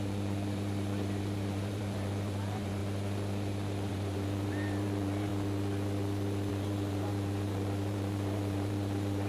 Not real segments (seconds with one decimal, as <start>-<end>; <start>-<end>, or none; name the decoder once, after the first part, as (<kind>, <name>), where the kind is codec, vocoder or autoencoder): 0.0-2.8 (vocoder, BigVGAN v2); 3.9-5.3; 6.5-9.3